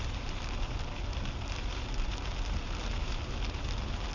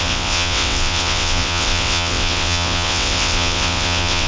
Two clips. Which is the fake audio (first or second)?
second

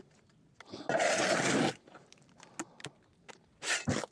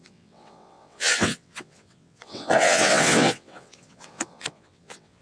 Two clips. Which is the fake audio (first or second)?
second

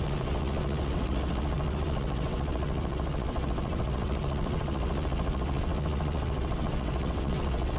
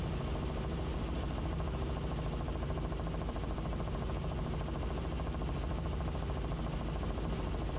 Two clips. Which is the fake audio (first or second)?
first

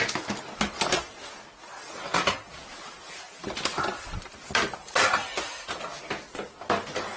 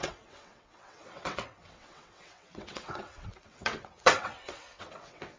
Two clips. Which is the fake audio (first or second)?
second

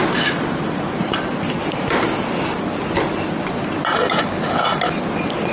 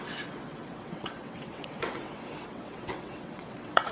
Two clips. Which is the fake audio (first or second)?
second